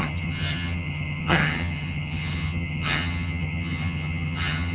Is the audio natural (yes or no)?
no